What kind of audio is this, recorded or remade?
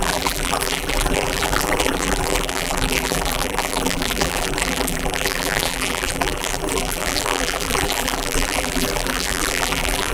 remade